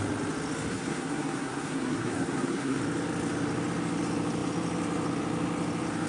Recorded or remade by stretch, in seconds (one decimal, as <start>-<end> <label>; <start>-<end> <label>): 0.0-0.7 recorded; 0.7-2.8 remade; 2.8-6.1 recorded